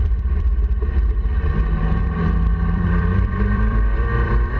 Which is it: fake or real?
fake